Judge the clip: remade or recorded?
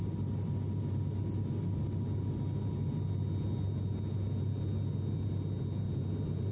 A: recorded